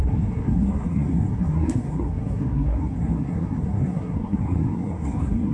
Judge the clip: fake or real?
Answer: fake